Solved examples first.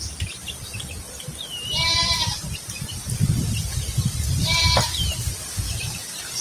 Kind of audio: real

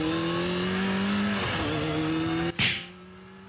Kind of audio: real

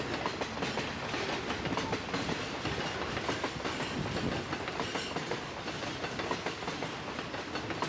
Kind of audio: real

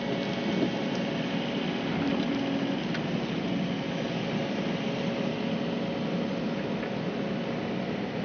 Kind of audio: real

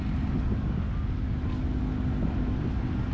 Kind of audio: real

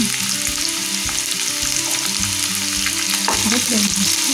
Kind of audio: real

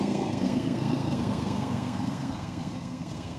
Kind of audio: fake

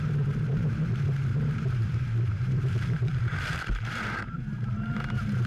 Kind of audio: fake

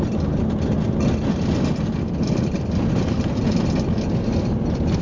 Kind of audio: real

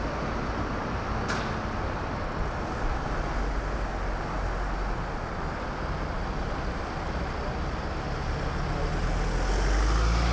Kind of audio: real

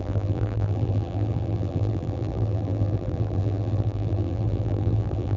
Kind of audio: fake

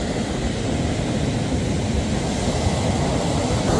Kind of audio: real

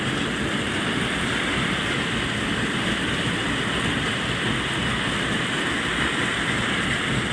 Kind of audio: real